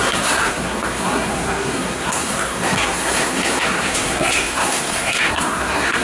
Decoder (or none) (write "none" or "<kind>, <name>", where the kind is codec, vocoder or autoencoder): codec, SNAC